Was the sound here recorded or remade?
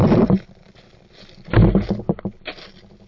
recorded